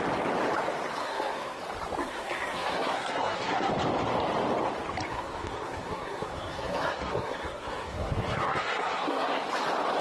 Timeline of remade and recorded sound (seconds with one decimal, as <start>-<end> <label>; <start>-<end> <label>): 0.0-1.0 recorded; 1.0-1.6 remade; 1.6-2.0 recorded; 2.0-3.7 remade; 3.7-5.1 recorded; 5.1-9.4 remade; 9.4-10.0 recorded